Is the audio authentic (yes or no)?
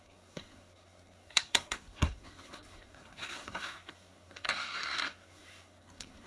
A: no